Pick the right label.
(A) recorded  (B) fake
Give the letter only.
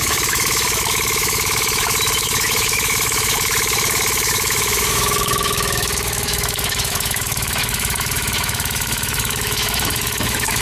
B